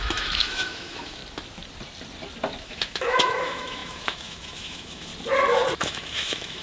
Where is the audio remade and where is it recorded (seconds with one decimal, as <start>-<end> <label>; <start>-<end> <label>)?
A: 0.0-1.2 remade; 1.2-2.6 recorded; 2.6-5.1 remade; 5.1-5.8 recorded; 5.8-6.6 remade